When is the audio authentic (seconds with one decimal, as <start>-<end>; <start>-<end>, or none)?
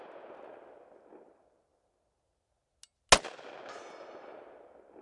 0.0-5.0